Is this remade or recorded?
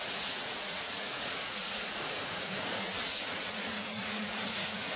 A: remade